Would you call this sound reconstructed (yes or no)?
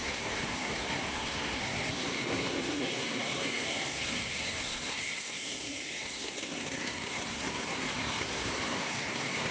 yes